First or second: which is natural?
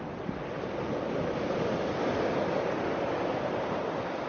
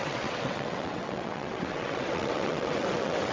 first